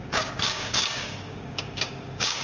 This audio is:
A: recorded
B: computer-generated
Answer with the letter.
B